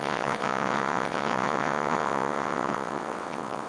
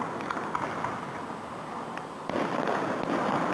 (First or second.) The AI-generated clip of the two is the first